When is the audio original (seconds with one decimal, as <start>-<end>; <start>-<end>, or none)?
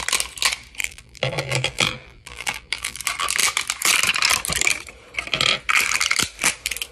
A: 0.0-0.8; 3.0-6.9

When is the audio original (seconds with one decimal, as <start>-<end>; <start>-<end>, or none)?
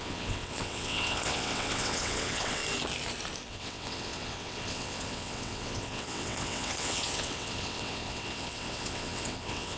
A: 2.6-3.5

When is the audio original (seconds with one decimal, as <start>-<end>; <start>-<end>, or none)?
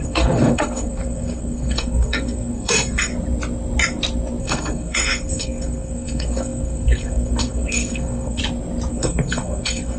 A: 3.1-4.4; 8.4-8.9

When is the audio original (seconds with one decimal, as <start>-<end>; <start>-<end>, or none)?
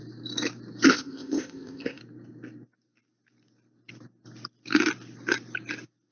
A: 0.0-0.9; 2.0-6.1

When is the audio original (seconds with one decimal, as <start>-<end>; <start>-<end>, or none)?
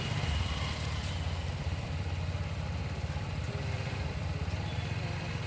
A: 0.0-1.0; 4.3-5.5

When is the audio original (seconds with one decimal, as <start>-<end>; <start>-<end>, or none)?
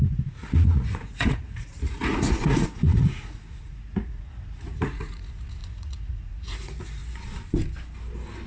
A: 7.0-8.5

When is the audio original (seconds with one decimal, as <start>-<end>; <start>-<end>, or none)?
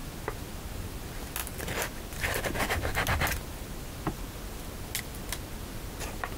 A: 0.0-6.4